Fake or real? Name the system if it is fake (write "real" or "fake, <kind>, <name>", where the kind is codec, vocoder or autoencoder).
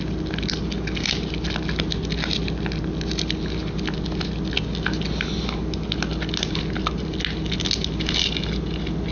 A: real